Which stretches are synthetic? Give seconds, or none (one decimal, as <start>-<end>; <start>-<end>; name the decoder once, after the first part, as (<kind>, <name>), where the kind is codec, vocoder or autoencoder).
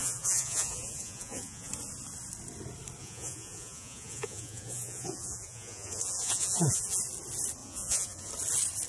0.0-1.7 (vocoder, Vocos); 3.0-7.0; 7.6-8.3